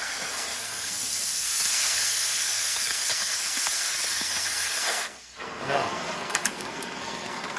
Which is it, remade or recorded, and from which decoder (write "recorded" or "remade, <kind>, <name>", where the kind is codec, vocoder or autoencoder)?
remade, codec, SNAC